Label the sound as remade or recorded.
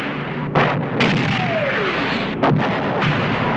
recorded